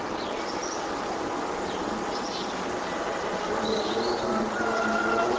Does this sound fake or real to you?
real